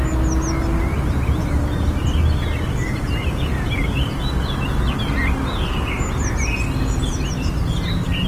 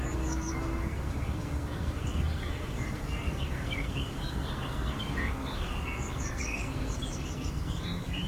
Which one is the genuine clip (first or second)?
first